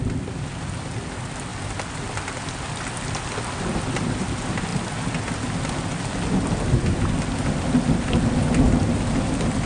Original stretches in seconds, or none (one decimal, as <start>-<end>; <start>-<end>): 0.0-9.7